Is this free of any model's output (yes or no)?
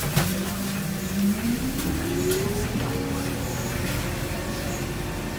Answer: yes